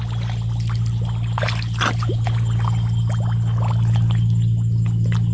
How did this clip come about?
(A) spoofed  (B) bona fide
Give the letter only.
B